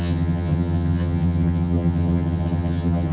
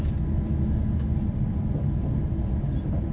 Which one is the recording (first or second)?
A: second